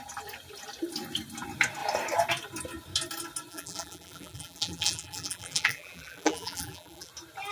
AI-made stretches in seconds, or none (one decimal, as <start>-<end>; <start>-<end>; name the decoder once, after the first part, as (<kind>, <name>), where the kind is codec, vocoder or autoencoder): 3.5-7.1 (vocoder, BigVGAN v2)